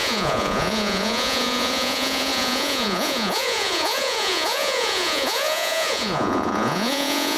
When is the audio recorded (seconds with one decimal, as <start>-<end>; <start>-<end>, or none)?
none